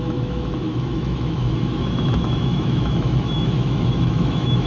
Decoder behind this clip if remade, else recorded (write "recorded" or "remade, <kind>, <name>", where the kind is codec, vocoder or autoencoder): remade, autoencoder, DAC-VAE